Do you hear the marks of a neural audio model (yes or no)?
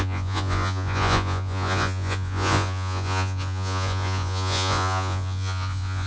yes